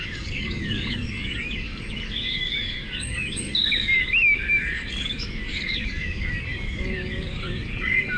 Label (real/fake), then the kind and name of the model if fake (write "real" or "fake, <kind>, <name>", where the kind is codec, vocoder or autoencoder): fake, codec, DAC